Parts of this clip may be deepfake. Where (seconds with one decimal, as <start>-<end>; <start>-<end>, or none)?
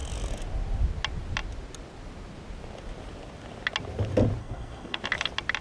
4.4-5.0